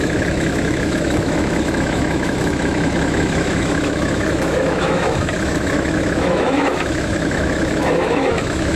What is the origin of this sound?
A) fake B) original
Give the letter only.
A